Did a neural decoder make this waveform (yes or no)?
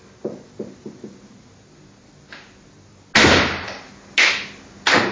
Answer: no